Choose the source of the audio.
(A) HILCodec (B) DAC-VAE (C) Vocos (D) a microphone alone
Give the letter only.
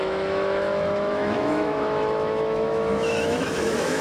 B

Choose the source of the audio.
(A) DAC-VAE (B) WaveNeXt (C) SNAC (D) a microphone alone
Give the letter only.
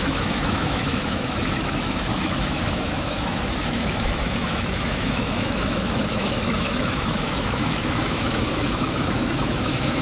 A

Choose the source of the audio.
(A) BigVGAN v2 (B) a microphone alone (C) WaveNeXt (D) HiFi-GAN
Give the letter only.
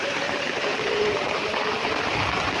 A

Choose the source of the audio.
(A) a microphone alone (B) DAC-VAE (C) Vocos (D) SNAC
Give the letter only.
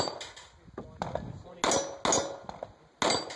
A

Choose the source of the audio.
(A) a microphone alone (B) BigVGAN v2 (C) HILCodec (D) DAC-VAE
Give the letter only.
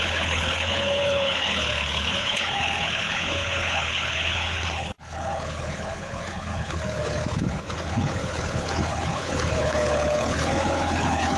C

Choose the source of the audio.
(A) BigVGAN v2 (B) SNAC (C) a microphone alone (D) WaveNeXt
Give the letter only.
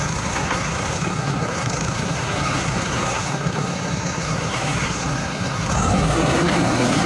B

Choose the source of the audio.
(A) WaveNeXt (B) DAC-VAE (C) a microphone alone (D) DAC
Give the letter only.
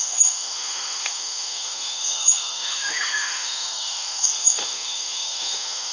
B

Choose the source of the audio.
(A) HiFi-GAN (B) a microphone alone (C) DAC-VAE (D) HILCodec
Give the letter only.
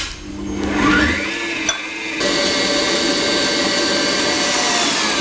B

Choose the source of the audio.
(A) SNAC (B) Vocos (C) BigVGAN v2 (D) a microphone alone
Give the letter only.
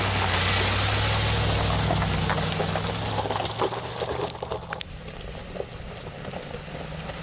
D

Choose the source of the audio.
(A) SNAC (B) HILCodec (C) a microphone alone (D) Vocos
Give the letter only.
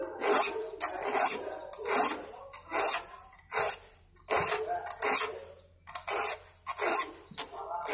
C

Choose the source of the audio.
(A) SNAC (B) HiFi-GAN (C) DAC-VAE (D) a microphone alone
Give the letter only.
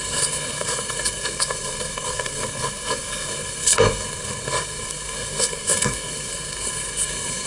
A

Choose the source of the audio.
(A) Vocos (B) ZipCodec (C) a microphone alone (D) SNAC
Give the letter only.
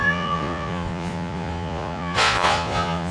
A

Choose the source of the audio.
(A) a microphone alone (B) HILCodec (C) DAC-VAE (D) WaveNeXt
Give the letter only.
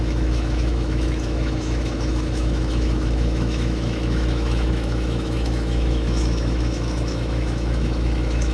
C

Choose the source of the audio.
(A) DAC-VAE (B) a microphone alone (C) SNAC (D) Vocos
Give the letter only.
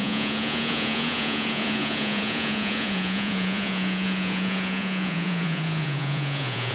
D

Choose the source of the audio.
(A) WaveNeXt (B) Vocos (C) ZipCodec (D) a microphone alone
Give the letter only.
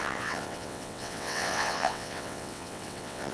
A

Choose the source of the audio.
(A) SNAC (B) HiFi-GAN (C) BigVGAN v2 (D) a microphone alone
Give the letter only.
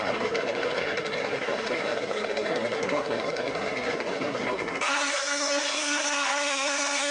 A